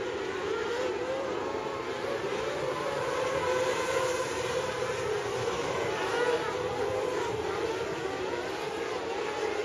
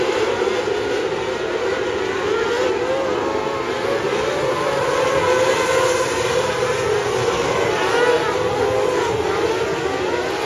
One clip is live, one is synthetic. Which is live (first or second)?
second